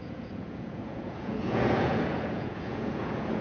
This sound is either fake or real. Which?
fake